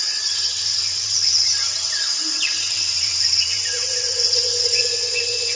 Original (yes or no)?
no